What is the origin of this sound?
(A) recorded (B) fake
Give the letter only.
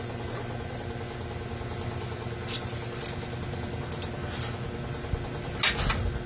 A